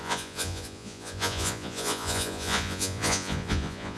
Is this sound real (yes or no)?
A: no